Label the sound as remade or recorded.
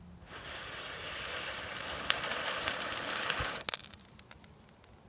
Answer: recorded